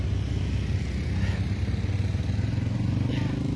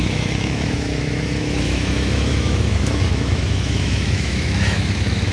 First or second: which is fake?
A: second